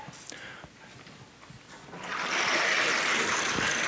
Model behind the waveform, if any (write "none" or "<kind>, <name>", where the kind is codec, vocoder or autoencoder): none